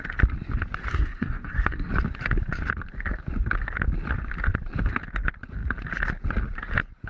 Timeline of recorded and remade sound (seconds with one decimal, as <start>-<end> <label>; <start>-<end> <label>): 0.0-0.9 recorded; 0.9-1.9 remade; 1.9-7.1 recorded